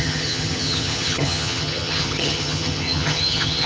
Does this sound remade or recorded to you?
remade